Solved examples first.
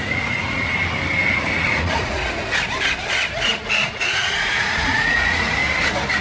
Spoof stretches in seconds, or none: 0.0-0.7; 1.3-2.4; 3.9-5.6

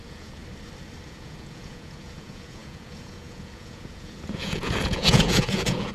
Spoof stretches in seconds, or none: 0.0-0.4; 1.0-5.9

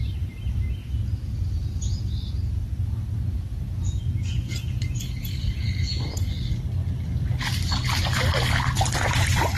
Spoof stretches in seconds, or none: 4.4-6.3